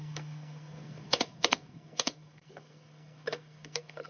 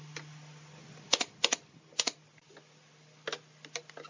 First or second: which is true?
second